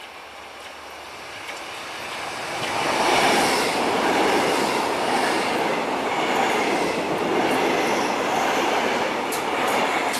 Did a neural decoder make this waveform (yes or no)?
no